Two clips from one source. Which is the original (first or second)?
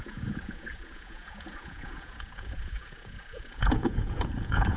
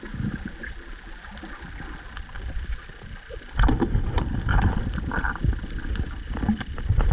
second